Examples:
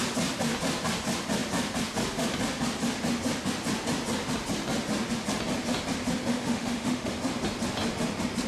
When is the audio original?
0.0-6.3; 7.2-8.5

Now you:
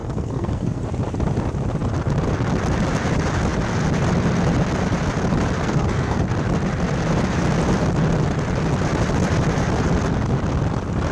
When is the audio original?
0.8-5.6; 6.2-11.1

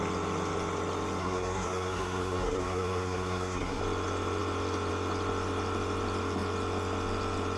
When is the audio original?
0.0-1.2; 3.8-7.6

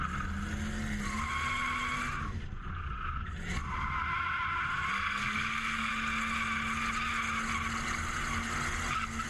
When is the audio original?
0.0-4.9; 5.9-9.3

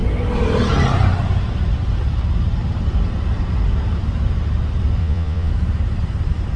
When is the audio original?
0.0-5.0; 5.5-6.6

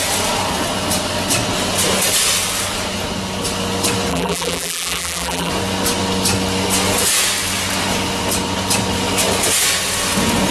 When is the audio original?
0.0-4.1; 5.5-10.5